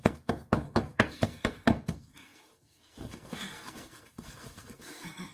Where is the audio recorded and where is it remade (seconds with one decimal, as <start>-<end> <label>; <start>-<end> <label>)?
0.0-5.3 remade